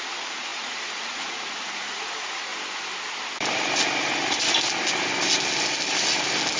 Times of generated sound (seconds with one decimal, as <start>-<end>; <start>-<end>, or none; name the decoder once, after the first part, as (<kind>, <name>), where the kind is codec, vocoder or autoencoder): 0.0-2.5 (vocoder, Vocos)